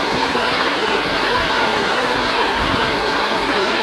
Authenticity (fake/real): fake